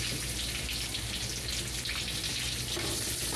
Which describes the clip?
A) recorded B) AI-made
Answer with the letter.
A